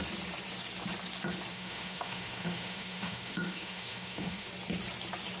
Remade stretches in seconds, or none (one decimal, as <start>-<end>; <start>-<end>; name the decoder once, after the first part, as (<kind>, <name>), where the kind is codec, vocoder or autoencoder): 1.5-4.5 (autoencoder, DAC-VAE)